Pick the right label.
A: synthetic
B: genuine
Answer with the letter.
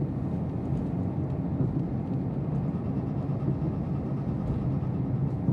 B